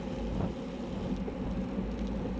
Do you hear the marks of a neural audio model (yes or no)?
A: no